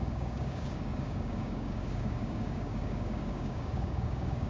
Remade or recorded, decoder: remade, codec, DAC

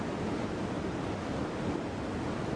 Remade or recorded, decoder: recorded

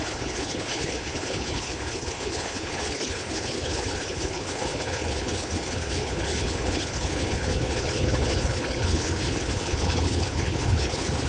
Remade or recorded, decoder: remade, codec, HILCodec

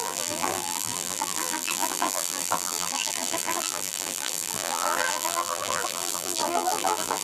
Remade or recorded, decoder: remade, vocoder, BigVGAN v2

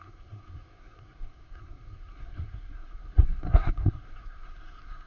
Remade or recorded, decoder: remade, codec, SNAC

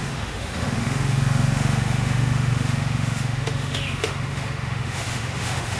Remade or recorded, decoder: remade, autoencoder, DAC-VAE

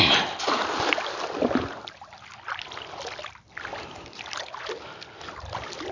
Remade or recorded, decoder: recorded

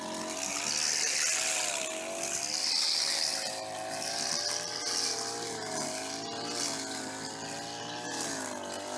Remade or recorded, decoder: recorded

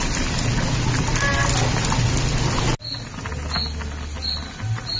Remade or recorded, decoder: recorded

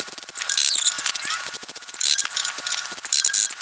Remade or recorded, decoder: recorded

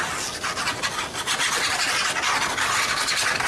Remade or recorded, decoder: recorded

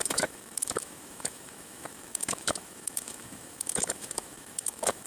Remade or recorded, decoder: remade, autoencoder, DAC-VAE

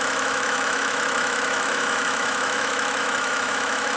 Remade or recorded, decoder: remade, autoencoder, DAC-VAE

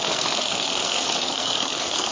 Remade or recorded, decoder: remade, codec, SNAC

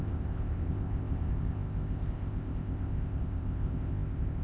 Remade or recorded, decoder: remade, codec, ZipCodec